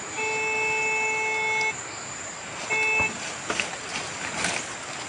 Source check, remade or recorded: recorded